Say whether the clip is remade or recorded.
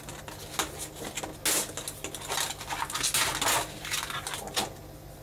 recorded